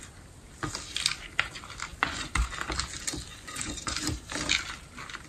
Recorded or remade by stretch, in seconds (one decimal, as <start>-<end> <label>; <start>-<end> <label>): 0.0-1.9 recorded; 1.9-2.5 remade; 2.5-3.3 recorded; 3.3-4.3 remade; 4.3-5.3 recorded